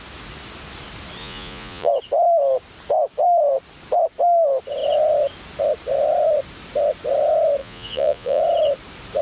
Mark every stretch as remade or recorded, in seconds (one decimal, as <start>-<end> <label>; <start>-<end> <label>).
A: 0.0-1.2 recorded; 1.2-1.9 remade; 1.9-7.6 recorded; 7.6-8.4 remade; 8.4-9.2 recorded